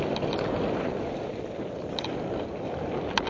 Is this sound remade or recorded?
recorded